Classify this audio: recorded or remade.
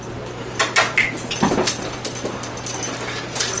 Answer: recorded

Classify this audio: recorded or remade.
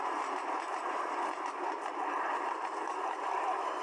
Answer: recorded